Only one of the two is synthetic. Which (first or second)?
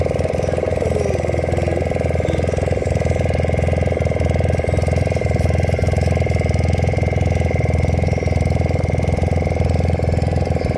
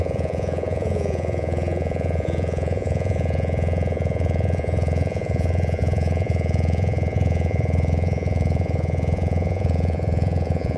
second